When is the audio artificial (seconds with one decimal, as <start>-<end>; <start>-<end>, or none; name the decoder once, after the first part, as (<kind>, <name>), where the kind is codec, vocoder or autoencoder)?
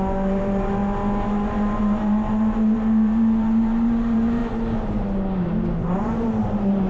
0.0-0.8 (vocoder, BigVGAN v2); 1.8-4.4; 5.8-6.9